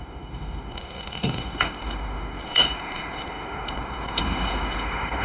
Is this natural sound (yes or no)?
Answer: no